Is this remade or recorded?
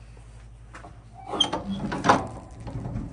recorded